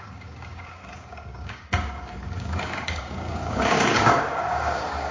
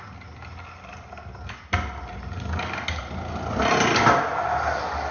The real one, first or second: second